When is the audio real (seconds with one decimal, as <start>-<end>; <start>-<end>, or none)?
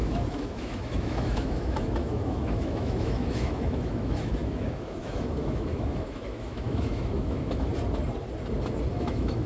7.7-8.9